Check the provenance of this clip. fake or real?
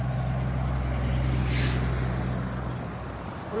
real